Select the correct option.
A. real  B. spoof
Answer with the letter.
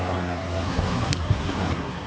B